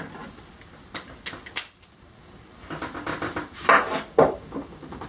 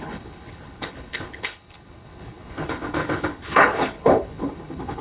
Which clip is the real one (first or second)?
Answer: first